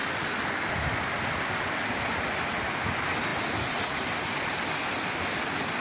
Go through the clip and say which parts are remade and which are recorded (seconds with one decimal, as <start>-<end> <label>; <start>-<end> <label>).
0.0-5.8 recorded